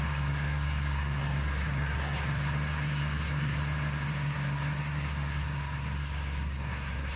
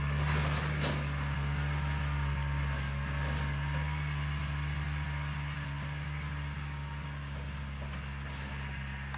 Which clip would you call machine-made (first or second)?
first